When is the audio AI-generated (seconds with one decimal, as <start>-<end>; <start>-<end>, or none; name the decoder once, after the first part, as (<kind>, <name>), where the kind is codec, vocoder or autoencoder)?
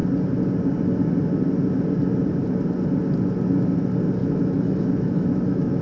4.2-5.8 (autoencoder, DAC-VAE)